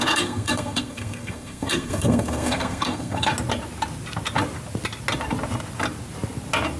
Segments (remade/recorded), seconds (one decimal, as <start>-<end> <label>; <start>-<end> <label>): 0.0-3.3 remade; 3.3-6.8 recorded